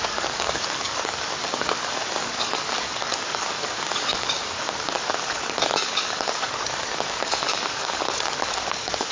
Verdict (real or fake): fake